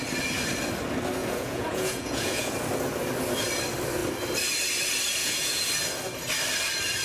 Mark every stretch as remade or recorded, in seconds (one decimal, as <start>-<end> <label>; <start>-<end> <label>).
0.0-1.2 recorded; 1.2-2.5 remade; 2.5-5.2 recorded; 5.2-5.7 remade; 5.7-7.0 recorded